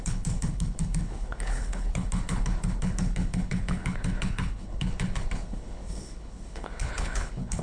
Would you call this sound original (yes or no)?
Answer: no